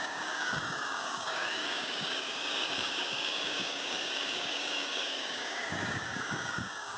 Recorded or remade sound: remade